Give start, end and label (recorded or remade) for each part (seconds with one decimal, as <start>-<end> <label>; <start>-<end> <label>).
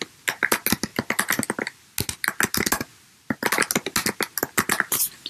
0.0-5.3 recorded